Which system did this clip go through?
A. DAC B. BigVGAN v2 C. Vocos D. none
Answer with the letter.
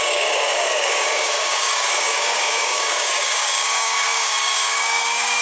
A